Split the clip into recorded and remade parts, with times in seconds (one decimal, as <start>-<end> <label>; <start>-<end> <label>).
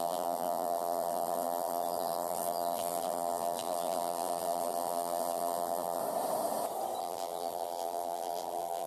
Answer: 0.0-6.0 remade; 6.0-7.0 recorded; 7.0-8.9 remade